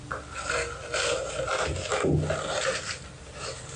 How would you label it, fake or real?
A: real